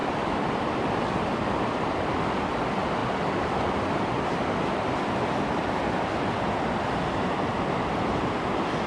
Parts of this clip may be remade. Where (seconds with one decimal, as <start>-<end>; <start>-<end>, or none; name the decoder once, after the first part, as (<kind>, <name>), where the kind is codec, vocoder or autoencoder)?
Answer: 0.0-2.2 (vocoder, BigVGAN v2)